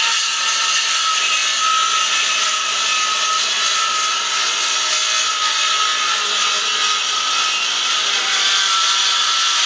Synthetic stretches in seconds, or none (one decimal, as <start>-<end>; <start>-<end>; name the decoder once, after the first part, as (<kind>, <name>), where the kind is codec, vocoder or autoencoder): 0.0-1.4 (vocoder, BigVGAN v2); 5.4-5.9; 7.0-9.7